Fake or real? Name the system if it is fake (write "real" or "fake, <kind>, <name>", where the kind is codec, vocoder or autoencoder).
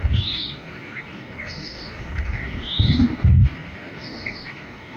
fake, codec, DAC